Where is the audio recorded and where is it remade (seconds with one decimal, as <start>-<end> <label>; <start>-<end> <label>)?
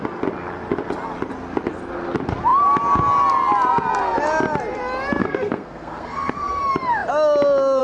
0.0-5.2 recorded; 5.2-6.6 remade; 6.6-7.8 recorded